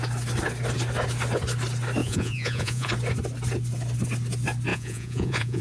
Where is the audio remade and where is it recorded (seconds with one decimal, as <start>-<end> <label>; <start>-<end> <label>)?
0.0-2.0 recorded; 2.0-2.9 remade; 2.9-4.7 recorded; 4.7-5.6 remade